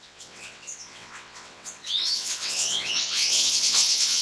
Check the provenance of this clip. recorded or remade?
remade